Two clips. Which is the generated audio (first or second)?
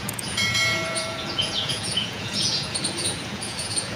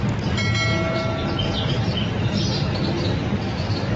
first